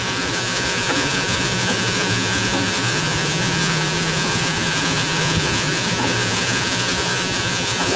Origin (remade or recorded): remade